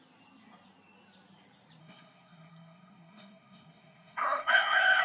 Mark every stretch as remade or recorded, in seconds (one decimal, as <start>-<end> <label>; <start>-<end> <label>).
0.0-1.8 recorded; 1.8-5.0 remade